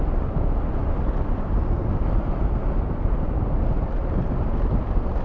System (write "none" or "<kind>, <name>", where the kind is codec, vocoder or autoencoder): none